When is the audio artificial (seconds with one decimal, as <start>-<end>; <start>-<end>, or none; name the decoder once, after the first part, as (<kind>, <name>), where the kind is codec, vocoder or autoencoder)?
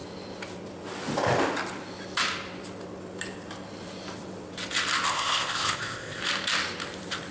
5.1-6.2 (codec, ZipCodec)